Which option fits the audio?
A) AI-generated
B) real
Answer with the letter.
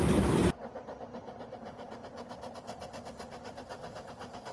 B